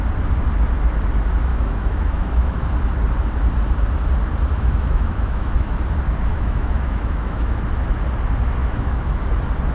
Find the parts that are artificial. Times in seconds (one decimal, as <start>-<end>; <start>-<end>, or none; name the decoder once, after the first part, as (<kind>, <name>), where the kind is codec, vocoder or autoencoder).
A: 1.5-2.7 (autoencoder, DAC-VAE); 4.5-5.7; 6.3-7.6; 8.6-9.1

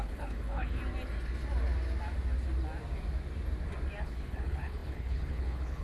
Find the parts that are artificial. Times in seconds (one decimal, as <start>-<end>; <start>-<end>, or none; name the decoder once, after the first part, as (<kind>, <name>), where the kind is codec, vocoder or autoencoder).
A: 0.0-0.8 (codec, HILCodec); 4.0-5.8